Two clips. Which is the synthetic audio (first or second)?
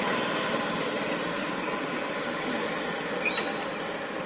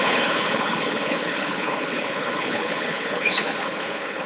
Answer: second